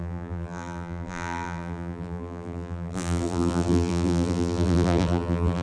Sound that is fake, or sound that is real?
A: fake